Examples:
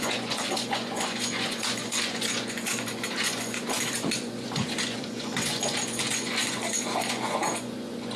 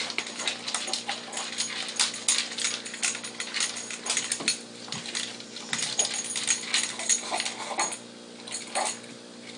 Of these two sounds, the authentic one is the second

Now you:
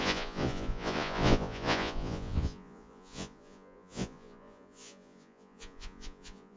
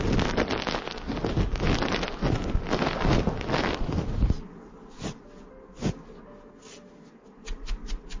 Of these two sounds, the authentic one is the second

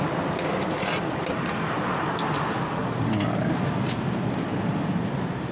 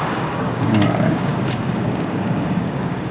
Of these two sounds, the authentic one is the first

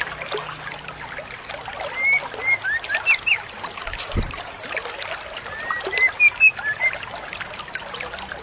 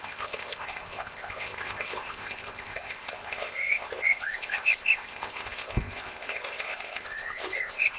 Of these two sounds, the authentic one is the first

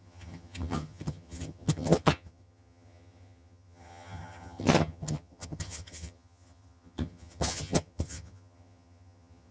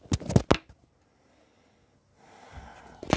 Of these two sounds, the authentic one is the second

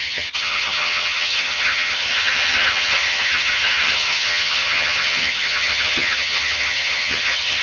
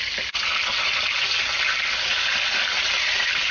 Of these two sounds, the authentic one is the second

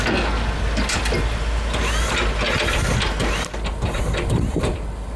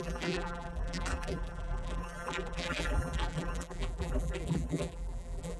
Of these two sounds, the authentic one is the first